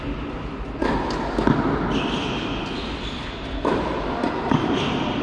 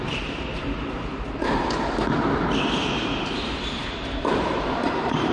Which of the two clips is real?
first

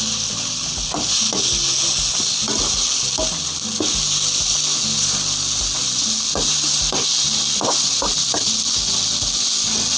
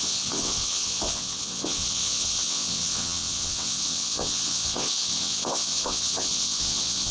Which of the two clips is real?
first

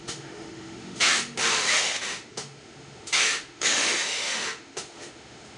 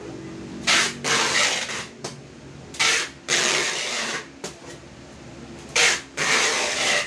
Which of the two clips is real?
second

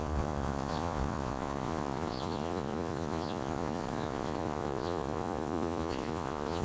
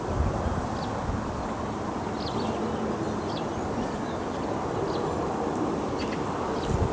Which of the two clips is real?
second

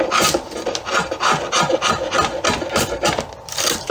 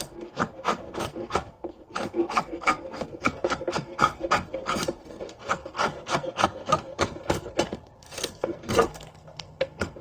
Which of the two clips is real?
first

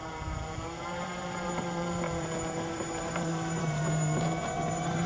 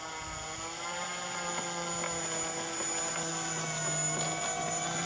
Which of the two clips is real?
second